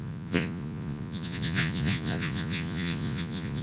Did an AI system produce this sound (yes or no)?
yes